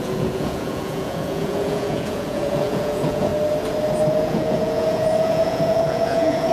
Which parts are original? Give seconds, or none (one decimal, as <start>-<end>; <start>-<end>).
3.3-4.1